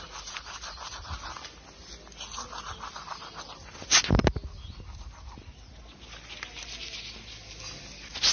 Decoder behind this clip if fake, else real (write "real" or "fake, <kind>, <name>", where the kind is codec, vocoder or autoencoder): real